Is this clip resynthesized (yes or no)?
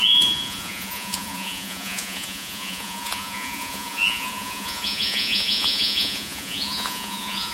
yes